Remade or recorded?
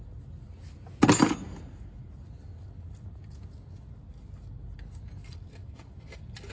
recorded